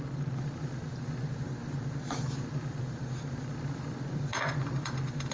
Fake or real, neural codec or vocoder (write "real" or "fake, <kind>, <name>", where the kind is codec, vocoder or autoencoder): fake, vocoder, BigVGAN v2